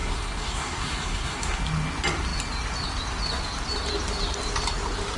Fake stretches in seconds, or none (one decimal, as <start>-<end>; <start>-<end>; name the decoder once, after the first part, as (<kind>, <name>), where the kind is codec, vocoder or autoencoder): 0.0-1.6 (codec, SNAC)